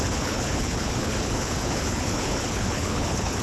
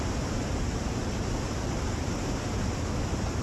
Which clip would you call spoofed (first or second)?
first